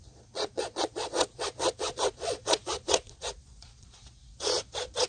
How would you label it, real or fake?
fake